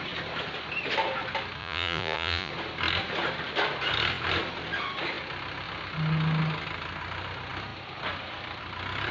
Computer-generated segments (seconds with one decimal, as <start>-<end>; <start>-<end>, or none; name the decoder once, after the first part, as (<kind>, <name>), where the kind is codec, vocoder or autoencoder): 1.6-2.5 (vocoder, Vocos)